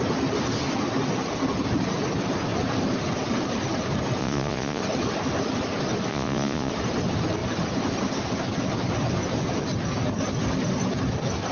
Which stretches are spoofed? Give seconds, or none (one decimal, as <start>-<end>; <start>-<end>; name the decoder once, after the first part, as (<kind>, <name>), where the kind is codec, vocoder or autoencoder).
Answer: 4.2-4.8 (vocoder, Vocos); 6.1-6.7